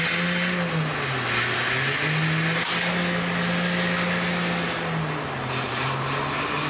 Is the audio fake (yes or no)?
no